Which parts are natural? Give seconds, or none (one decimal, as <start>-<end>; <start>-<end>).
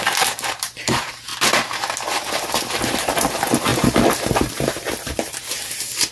1.3-2.3